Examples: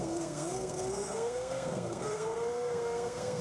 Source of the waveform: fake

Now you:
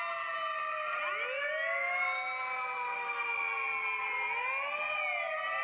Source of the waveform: real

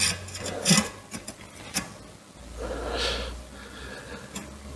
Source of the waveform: real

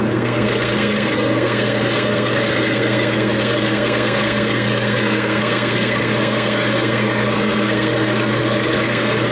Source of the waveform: fake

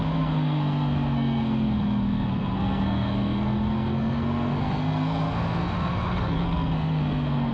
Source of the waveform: fake